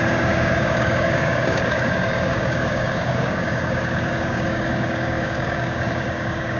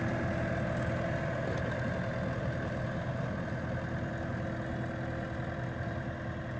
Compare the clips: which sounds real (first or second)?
second